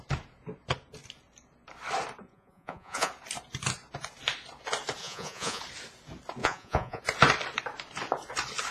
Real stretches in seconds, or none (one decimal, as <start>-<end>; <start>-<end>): 0.0-2.3; 3.1-5.0; 5.6-6.4; 7.0-8.7